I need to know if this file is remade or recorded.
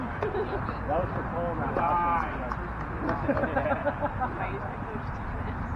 recorded